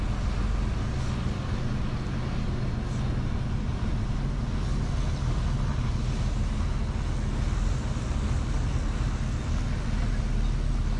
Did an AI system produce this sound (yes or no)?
no